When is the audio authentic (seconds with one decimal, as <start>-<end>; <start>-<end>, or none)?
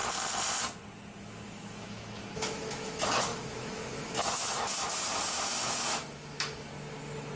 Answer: 0.0-1.2; 6.7-7.4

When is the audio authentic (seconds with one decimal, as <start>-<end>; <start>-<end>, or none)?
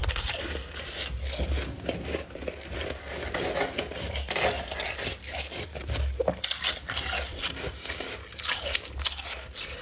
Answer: 0.0-5.1; 5.8-9.8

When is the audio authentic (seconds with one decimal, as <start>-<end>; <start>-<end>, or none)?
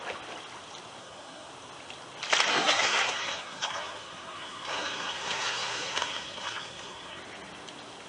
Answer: 0.0-1.0; 1.5-2.5; 7.2-8.1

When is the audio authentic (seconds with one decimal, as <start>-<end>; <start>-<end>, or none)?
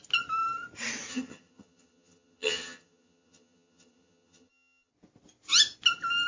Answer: 0.0-1.1; 4.9-6.3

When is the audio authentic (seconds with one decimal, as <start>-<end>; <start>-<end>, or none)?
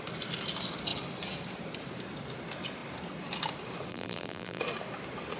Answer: 0.0-3.9; 4.6-5.4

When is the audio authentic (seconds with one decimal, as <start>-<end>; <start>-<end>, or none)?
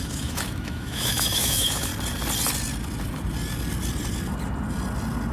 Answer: 1.9-5.3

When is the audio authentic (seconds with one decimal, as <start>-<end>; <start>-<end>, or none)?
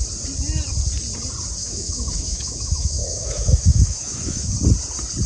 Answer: 0.0-1.6; 4.5-5.3